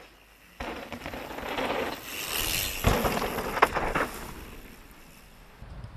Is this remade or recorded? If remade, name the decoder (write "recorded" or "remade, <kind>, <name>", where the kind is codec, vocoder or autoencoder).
recorded